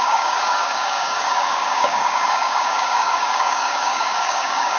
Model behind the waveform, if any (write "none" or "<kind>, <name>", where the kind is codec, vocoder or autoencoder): codec, DAC